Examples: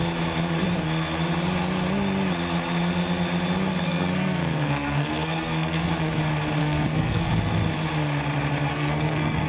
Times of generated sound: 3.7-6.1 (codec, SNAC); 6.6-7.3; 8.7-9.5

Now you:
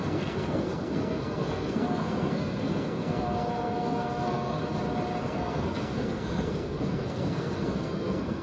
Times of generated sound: 0.0-4.6 (codec, SNAC); 5.2-8.4

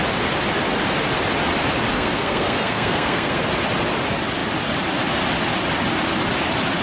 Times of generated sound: 1.9-3.4 (codec, SNAC)

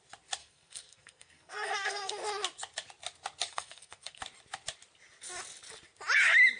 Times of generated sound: 0.4-2.1 (codec, SNAC); 3.5-4.2

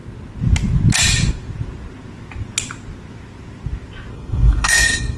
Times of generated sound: 4.1-5.2 (codec, SNAC)

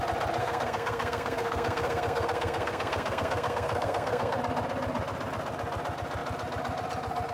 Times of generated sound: 0.4-4.4 (codec, SNAC)

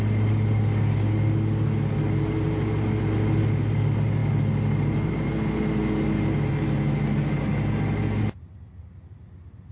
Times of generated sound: none

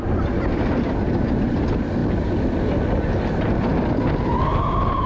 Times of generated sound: none